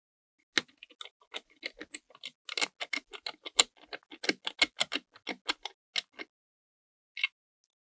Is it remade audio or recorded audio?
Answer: recorded